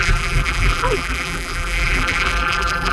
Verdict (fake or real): fake